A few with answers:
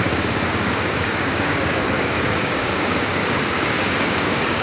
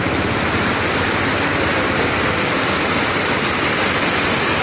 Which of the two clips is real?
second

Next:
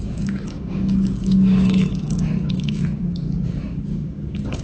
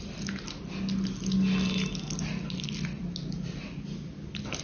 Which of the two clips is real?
second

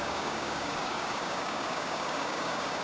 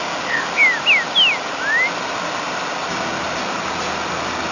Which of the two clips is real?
second